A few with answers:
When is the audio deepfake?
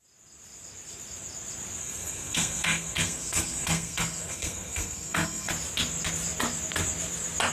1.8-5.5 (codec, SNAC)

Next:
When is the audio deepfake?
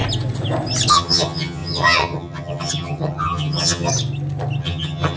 0.9-3.9 (vocoder, HiFi-GAN); 4.6-5.2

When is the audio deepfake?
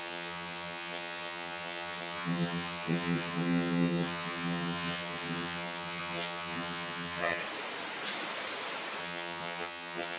0.0-7.4 (vocoder, HiFi-GAN); 9.0-10.2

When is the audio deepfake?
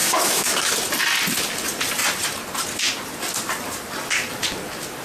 0.0-0.7 (autoencoder, DAC-VAE)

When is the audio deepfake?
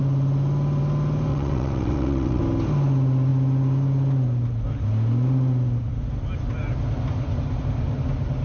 1.3-2.4 (vocoder, WaveNeXt)